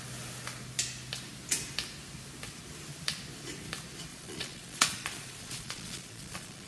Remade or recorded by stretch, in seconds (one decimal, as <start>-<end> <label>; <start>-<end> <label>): 0.0-4.1 recorded; 4.1-6.7 remade